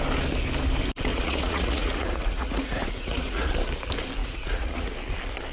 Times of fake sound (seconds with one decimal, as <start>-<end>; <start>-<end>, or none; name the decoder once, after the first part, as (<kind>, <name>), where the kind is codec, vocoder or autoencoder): 1.1-3.5 (vocoder, Vocos); 4.2-4.9